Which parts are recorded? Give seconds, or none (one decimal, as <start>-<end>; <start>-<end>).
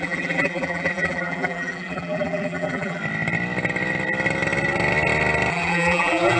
3.0-5.5